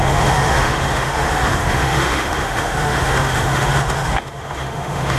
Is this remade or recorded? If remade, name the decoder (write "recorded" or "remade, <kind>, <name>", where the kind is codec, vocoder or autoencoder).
remade, autoencoder, DAC-VAE